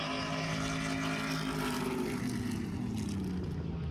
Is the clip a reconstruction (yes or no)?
no